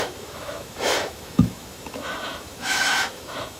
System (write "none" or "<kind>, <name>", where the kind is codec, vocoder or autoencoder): autoencoder, DAC-VAE